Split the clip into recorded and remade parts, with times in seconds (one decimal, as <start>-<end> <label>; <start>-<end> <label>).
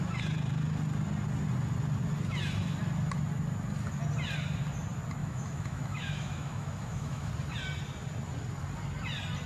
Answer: 0.0-5.2 recorded; 5.2-7.3 remade; 7.3-9.5 recorded